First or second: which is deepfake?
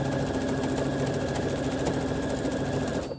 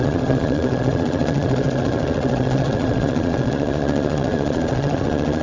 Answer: second